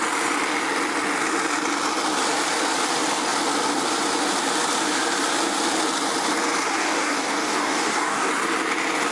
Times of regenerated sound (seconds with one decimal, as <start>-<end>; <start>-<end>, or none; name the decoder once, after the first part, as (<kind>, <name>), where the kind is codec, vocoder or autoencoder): 6.7-8.3 (codec, DAC)